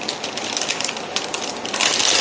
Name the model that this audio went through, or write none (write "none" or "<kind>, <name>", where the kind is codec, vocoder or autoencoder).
none